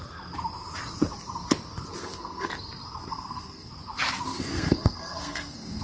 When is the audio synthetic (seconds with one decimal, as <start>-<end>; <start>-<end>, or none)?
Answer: 2.0-2.5; 3.1-3.7; 4.3-5.8

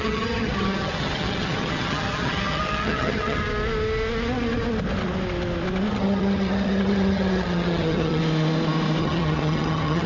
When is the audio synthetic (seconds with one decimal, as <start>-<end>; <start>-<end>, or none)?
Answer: 0.0-3.4; 5.9-8.2; 9.0-10.1

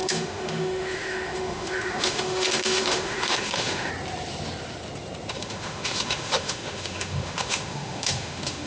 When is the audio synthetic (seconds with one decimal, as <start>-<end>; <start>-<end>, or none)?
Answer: 0.0-3.9; 5.3-8.7

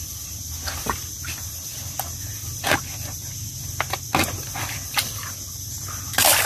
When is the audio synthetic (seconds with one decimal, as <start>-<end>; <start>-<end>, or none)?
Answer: none

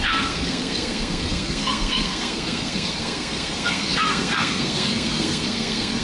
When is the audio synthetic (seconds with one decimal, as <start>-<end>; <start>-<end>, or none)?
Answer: 0.0-6.0